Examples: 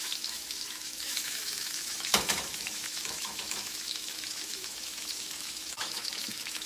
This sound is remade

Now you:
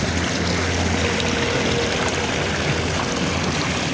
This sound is recorded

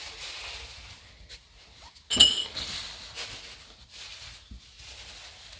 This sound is recorded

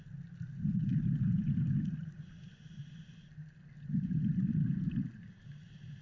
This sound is recorded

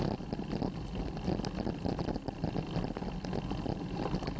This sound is recorded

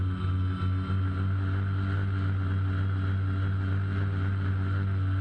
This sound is recorded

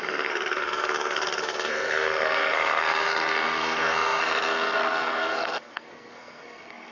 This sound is remade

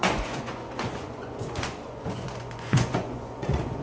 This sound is remade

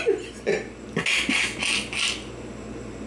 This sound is recorded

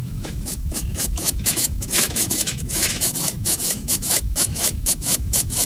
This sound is remade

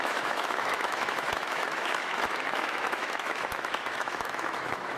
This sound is remade